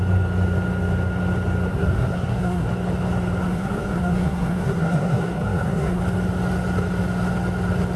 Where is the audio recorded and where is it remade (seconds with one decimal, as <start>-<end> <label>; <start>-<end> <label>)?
0.0-1.7 recorded; 1.7-2.7 remade; 2.7-3.4 recorded; 3.4-6.0 remade; 6.0-8.0 recorded